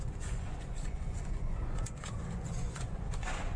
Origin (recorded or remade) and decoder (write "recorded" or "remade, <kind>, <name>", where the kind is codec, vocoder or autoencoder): remade, vocoder, Vocos